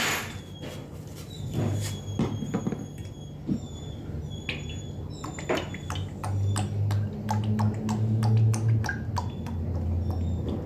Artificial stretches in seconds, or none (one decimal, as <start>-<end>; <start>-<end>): 0.8-2.0; 3.4-4.2